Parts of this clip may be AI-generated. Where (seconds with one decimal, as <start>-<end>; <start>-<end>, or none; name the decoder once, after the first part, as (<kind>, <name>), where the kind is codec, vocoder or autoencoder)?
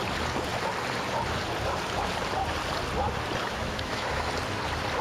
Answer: 3.4-4.3 (autoencoder, DAC-VAE)